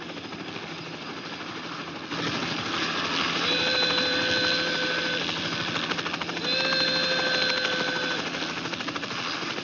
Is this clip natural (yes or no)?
yes